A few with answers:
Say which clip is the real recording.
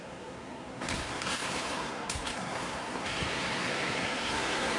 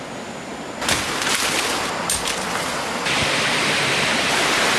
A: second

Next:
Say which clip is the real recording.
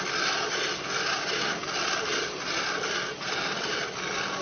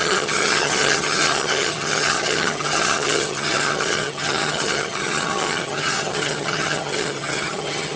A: first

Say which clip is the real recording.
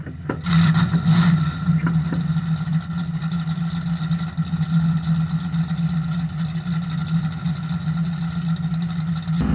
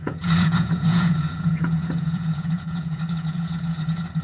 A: first